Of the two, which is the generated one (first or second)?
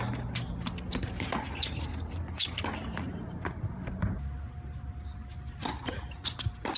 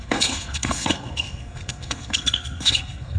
second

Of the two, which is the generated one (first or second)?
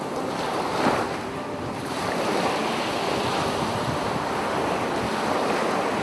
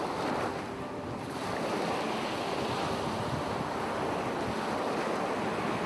first